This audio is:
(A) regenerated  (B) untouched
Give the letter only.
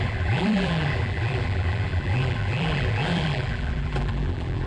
A